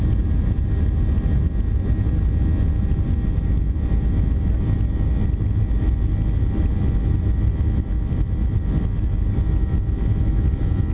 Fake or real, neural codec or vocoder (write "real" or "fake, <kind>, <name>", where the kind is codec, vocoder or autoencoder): real